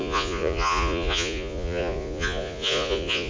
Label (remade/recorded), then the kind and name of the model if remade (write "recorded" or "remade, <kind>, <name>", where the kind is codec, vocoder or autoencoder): remade, vocoder, Vocos